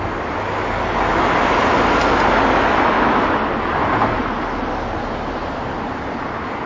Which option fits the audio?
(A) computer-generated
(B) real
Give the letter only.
B